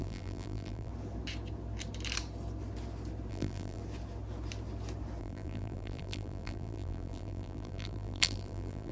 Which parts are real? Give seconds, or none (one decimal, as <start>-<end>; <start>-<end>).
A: 0.9-3.3; 3.8-5.2